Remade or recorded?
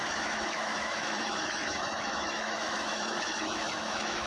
remade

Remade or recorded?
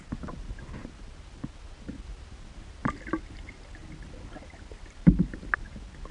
recorded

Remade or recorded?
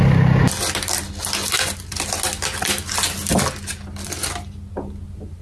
recorded